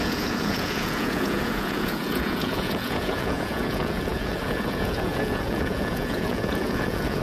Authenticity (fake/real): fake